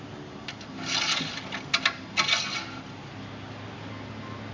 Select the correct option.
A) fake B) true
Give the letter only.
B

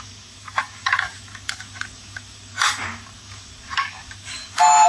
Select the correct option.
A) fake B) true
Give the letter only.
A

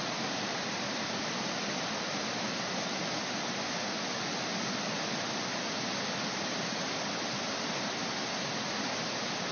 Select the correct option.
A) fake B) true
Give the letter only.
B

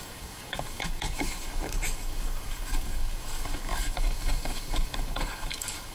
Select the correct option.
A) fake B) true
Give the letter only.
A